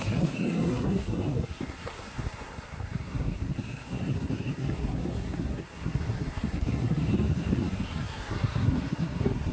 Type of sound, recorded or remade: remade